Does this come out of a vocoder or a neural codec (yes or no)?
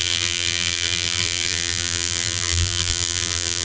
yes